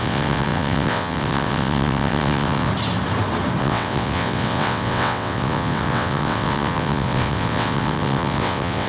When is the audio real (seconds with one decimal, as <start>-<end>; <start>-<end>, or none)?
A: 2.7-3.6